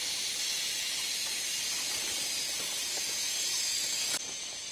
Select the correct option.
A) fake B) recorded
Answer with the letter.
B